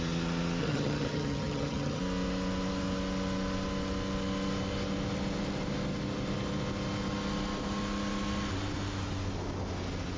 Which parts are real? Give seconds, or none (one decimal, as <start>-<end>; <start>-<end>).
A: 0.0-0.6; 2.0-10.2